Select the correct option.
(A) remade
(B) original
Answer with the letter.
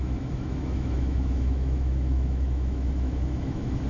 A